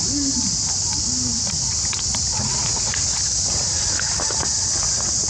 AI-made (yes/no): no